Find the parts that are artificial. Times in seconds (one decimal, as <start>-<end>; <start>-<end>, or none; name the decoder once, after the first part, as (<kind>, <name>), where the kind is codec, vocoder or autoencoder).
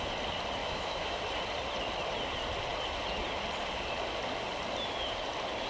0.6-1.2 (autoencoder, DAC-VAE)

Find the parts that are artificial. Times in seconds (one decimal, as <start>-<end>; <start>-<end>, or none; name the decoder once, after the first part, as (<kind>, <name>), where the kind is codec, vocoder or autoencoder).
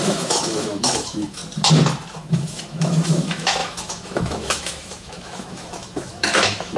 0.0-1.4 (autoencoder, DAC-VAE); 2.1-6.8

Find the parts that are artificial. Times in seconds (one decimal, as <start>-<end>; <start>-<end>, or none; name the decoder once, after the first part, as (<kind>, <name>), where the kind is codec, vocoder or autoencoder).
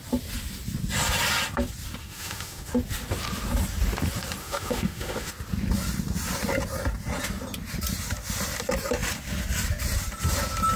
2.0-2.7 (autoencoder, DAC-VAE); 4.4-5.3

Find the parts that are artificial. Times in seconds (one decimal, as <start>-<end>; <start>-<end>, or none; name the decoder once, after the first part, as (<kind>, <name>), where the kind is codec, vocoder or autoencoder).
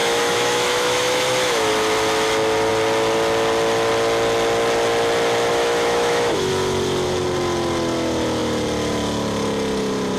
0.0-1.7 (autoencoder, DAC-VAE); 5.5-6.5